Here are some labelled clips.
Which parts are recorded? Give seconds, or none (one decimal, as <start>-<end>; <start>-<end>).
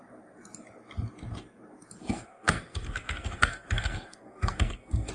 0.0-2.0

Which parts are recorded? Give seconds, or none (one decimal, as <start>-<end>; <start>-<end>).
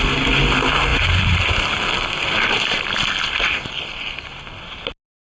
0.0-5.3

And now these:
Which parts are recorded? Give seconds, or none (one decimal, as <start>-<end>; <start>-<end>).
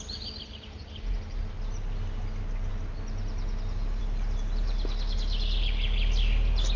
0.0-6.8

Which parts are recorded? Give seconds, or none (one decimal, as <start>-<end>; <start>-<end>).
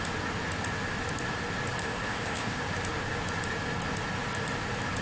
0.0-1.8; 2.6-5.0